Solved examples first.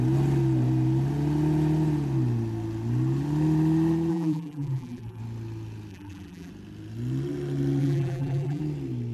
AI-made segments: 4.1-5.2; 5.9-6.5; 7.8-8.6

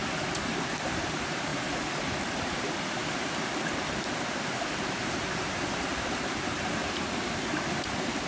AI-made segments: 0.0-1.5; 4.7-6.8